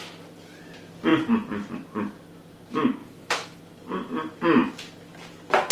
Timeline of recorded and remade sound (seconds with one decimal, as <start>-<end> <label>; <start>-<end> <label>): 0.0-3.0 recorded; 3.0-3.6 remade; 3.6-5.7 recorded